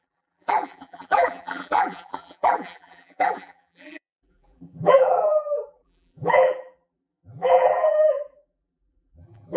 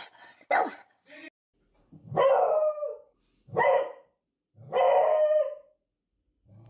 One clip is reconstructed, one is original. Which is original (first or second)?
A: second